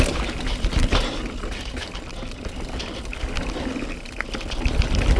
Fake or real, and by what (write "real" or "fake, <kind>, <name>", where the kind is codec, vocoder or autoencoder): real